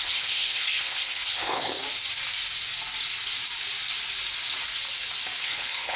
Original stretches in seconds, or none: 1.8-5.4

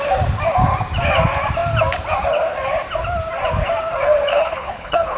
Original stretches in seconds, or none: 0.0-4.3

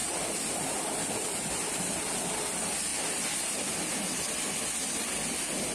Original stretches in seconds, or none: 0.0-5.7

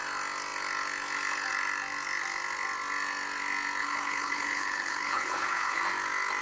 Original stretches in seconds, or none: 0.0-3.8; 5.8-6.4

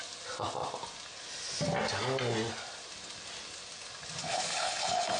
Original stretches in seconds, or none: 0.0-4.2

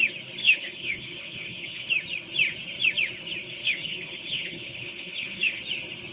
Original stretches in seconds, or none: 0.0-0.4; 1.9-3.6; 5.6-6.1